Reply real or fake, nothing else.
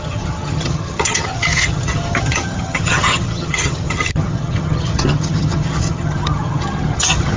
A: fake